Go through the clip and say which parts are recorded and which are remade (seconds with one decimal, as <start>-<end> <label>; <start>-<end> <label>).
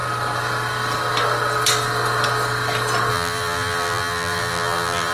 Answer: 0.0-3.1 recorded; 3.1-5.1 remade